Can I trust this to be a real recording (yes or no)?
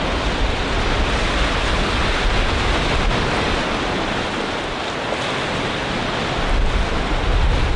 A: yes